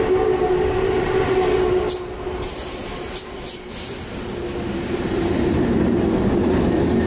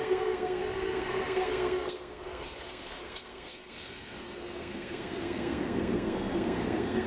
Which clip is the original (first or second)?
first